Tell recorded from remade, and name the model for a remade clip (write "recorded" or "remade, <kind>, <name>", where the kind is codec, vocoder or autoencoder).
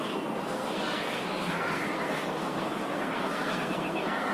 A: remade, codec, SNAC